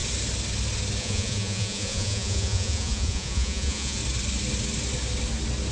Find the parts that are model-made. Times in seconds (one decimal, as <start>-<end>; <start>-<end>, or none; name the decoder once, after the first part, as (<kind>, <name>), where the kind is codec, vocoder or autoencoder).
1.0-4.0 (vocoder, Vocos)